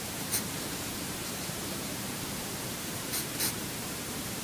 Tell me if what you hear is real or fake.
fake